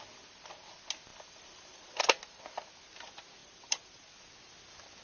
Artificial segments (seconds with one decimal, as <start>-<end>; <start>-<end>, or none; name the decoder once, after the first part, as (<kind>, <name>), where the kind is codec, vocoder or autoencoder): 1.1-2.0 (vocoder, BigVGAN v2); 3.4-4.2